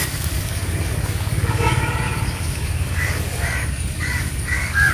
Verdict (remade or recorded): remade